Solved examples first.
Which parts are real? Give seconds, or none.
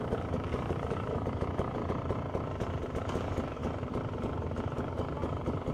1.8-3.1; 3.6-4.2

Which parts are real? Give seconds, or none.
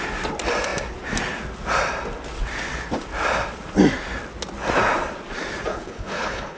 0.0-5.7